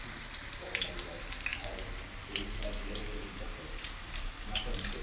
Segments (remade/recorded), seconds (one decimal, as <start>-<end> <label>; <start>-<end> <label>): 0.0-5.0 remade